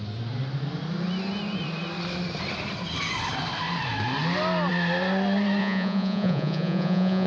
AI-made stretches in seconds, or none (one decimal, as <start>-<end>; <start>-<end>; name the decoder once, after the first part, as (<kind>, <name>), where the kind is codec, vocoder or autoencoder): 5.6-7.3 (vocoder, Vocos)